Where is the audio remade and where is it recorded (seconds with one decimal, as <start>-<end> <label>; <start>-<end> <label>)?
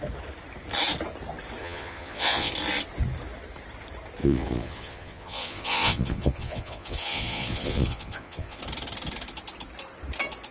0.0-1.6 recorded; 1.6-2.5 remade; 2.5-4.2 recorded; 4.2-8.6 remade; 8.6-10.5 recorded